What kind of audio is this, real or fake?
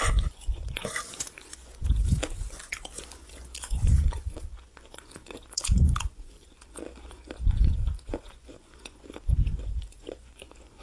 fake